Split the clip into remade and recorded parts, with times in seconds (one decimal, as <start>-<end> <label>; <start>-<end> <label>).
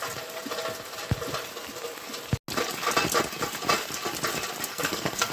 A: 0.0-4.7 recorded; 4.7-5.3 remade